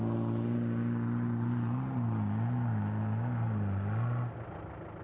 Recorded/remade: recorded